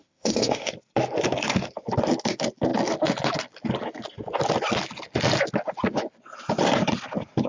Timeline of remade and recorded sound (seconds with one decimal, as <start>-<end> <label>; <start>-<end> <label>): 0.0-0.7 remade; 0.7-7.5 recorded